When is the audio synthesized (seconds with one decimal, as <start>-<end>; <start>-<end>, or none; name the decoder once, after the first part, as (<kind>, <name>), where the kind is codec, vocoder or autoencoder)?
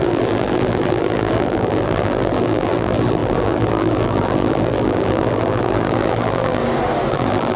0.0-6.6 (vocoder, BigVGAN v2); 7.1-7.6